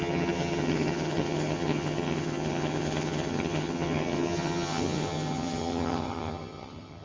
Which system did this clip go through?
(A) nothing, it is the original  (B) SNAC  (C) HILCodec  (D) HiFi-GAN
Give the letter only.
D